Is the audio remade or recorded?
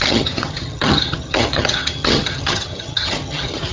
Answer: remade